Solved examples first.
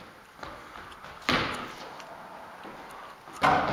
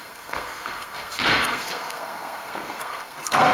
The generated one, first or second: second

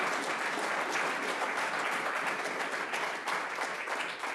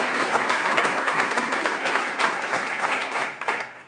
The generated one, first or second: second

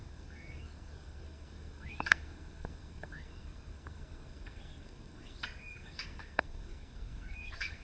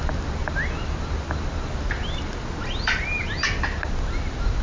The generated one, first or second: first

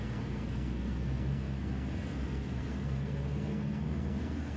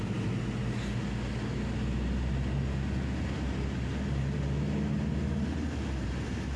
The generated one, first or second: first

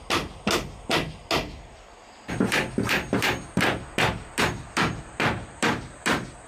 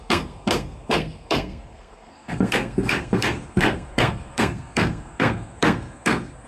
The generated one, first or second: second